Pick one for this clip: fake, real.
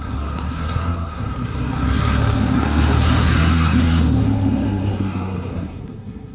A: fake